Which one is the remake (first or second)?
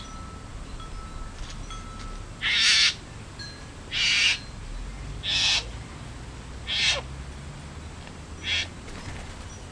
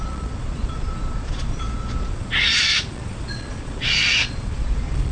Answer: second